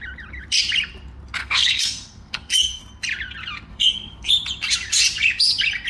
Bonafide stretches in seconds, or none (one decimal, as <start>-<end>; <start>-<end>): 0.0-1.4; 2.8-3.7; 4.3-5.9